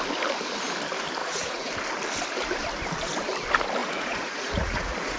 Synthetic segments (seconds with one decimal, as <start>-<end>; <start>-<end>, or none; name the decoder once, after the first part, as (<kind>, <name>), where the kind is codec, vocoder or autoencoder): 1.2-1.7 (vocoder, Vocos); 3.8-5.2